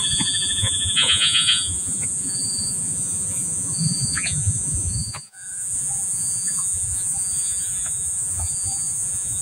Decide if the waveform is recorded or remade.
remade